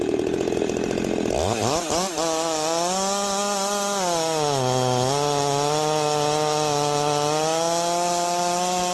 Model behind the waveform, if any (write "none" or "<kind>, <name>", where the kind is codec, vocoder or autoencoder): none